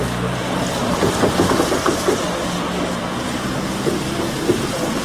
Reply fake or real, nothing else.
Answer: real